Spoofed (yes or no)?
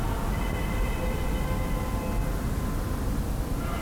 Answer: no